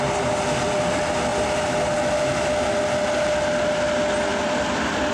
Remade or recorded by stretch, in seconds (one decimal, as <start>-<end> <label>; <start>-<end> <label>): 0.0-1.3 recorded; 1.3-1.8 remade; 1.8-4.3 recorded; 4.3-5.1 remade